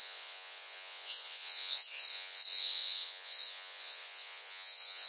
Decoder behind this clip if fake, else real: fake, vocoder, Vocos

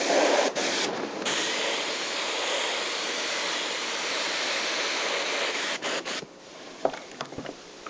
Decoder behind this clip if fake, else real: fake, vocoder, BigVGAN v2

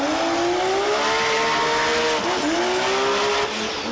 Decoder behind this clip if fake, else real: real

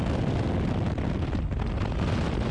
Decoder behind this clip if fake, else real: real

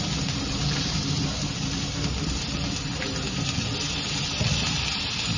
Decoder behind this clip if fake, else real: real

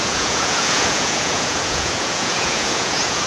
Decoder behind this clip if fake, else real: fake, vocoder, Vocos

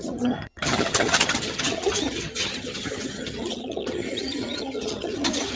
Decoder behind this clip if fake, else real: fake, vocoder, HiFi-GAN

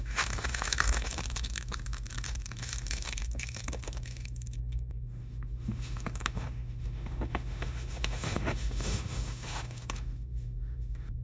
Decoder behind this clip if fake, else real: fake, autoencoder, DAC-VAE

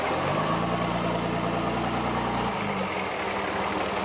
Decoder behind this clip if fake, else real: real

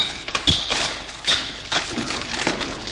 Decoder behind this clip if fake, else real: fake, codec, HILCodec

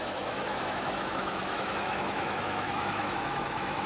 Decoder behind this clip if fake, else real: fake, autoencoder, DAC-VAE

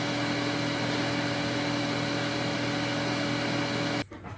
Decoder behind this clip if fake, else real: real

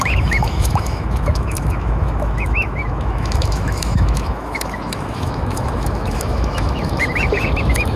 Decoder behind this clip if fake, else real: fake, autoencoder, DAC-VAE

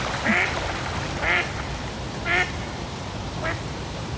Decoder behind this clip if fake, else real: real